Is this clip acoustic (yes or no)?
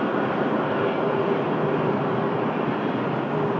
yes